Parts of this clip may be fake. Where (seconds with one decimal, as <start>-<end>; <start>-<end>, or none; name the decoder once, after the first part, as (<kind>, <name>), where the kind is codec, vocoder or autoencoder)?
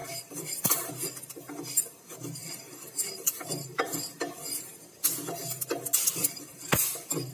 0.0-0.9 (vocoder, BigVGAN v2); 2.4-4.2; 6.2-6.7